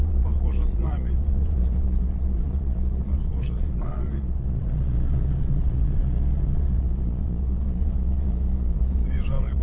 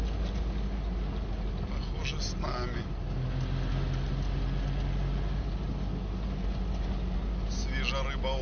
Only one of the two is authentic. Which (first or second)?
second